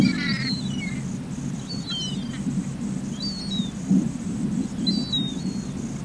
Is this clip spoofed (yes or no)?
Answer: no